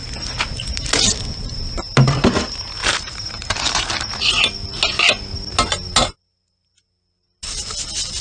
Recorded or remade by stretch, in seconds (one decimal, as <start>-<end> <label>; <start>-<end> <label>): 0.0-2.8 recorded; 2.8-3.9 remade; 3.9-8.2 recorded